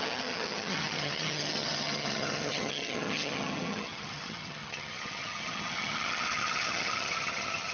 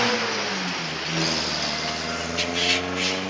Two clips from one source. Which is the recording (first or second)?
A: second